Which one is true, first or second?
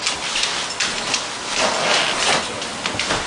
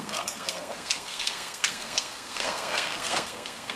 first